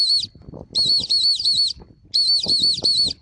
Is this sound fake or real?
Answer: real